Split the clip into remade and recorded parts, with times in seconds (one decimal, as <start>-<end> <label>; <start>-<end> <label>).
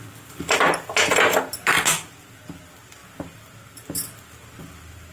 0.0-5.1 recorded